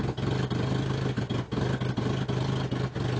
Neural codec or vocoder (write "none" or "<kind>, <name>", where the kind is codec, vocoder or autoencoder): none